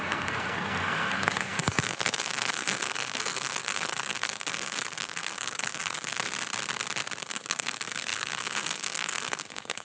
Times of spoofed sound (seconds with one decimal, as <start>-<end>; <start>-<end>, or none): 0.0-6.3; 7.2-9.8